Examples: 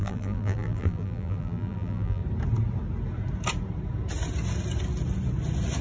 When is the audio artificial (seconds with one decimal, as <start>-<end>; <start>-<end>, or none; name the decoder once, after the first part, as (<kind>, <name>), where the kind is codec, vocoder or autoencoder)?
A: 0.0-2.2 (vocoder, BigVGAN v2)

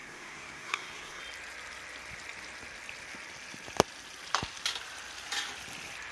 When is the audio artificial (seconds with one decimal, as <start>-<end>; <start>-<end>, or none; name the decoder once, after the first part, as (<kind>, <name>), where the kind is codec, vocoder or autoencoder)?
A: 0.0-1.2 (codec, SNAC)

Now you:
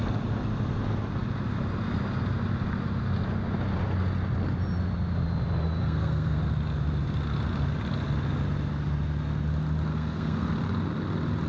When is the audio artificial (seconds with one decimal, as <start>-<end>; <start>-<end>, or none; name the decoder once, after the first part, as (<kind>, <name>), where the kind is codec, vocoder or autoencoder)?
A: 5.8-6.4 (codec, SNAC); 9.9-10.5